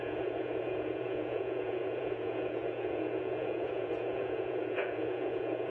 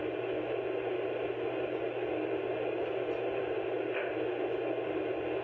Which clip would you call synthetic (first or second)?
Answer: first